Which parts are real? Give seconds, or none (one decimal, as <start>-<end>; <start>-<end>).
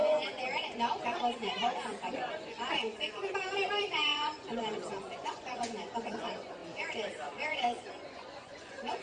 none